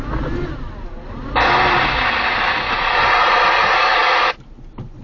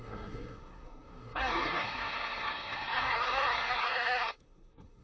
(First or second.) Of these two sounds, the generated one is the second